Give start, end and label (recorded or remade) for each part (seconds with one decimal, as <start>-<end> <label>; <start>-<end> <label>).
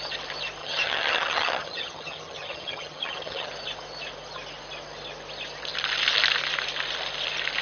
0.0-0.6 recorded; 0.6-3.5 remade; 3.5-7.6 recorded